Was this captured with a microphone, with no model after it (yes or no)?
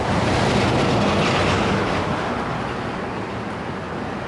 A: yes